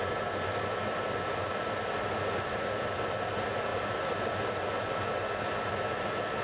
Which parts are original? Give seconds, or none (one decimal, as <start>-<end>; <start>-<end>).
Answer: 0.0-6.4